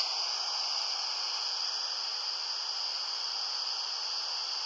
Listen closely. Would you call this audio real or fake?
real